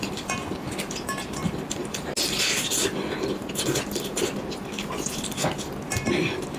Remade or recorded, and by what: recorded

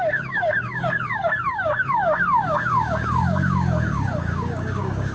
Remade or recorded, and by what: remade, codec, DAC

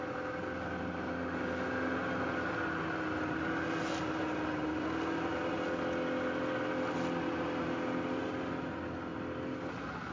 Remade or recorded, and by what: recorded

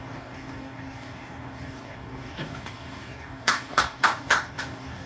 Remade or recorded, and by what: remade, codec, DAC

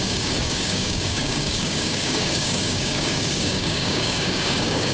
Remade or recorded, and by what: remade, codec, DAC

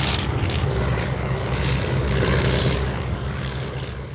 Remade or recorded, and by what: remade, codec, DAC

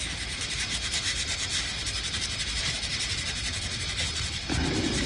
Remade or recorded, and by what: recorded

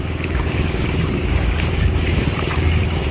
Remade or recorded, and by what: remade, codec, DAC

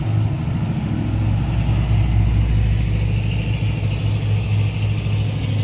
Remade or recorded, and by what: recorded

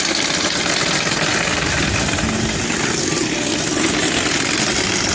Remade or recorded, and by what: recorded